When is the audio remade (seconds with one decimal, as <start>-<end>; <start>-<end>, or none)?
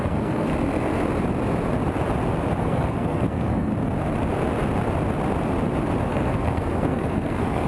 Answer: 0.0-0.5; 2.6-3.7; 6.1-7.7